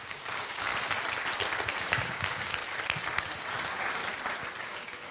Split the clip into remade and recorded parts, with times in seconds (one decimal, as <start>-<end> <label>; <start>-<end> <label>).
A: 0.0-0.7 remade; 0.7-1.8 recorded; 1.8-2.6 remade; 2.6-3.2 recorded; 3.2-4.0 remade; 4.0-4.6 recorded; 4.6-5.1 remade